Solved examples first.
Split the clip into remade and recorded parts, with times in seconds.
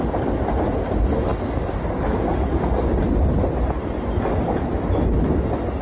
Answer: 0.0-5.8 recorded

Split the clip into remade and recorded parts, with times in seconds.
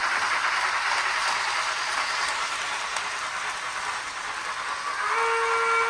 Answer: 0.0-5.9 recorded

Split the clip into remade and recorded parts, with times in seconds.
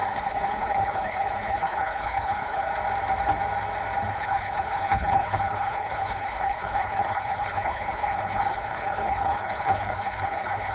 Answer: 0.0-2.7 remade; 2.7-4.1 recorded; 4.1-10.7 remade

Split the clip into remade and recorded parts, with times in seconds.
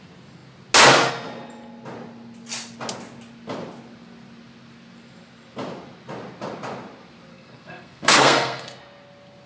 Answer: 0.0-7.3 recorded; 7.3-8.8 remade; 8.8-9.5 recorded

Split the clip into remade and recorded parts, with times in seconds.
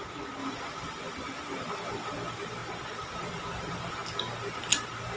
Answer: 0.0-5.2 recorded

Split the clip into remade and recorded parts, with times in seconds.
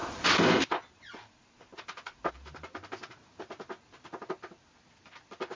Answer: 0.0-5.5 recorded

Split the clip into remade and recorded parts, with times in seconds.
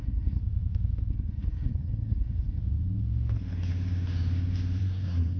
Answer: 0.0-0.4 remade; 0.4-1.1 recorded; 1.1-2.6 remade; 2.6-4.8 recorded; 4.8-5.4 remade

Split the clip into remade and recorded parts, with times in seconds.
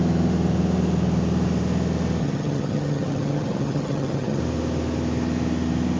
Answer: 0.0-2.2 recorded; 2.2-4.4 remade; 4.4-6.0 recorded